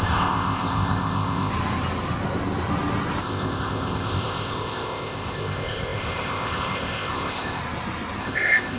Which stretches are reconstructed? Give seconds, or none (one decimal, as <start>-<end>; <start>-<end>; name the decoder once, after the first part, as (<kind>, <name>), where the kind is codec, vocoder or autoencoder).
0.0-1.5 (codec, ZipCodec); 3.2-7.6; 8.2-8.8